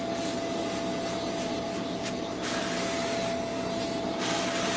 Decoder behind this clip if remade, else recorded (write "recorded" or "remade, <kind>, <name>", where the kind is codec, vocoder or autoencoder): recorded